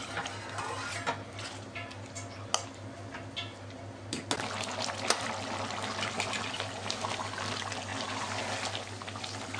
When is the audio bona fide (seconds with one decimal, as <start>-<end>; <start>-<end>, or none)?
0.0-9.6